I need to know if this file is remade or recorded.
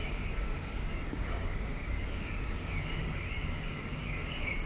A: remade